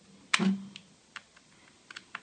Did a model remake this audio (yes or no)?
no